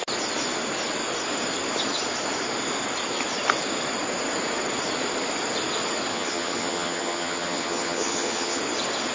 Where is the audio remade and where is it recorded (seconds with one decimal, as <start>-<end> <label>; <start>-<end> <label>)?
0.0-6.1 recorded; 6.1-8.6 remade; 8.6-9.1 recorded